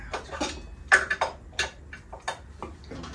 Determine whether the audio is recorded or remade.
recorded